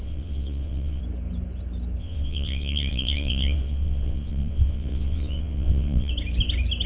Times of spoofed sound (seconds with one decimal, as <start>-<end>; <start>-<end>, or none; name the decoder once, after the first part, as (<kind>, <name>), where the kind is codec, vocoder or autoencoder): 0.0-1.0 (vocoder, WaveNeXt); 2.0-6.1